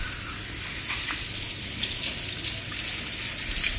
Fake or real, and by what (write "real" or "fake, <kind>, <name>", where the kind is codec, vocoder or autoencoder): real